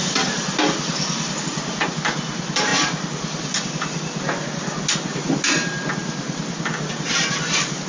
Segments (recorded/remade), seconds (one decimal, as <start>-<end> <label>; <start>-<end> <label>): 0.0-7.9 recorded